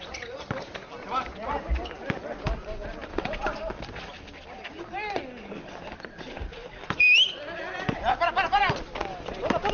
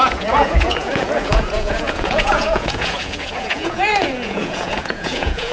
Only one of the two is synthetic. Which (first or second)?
second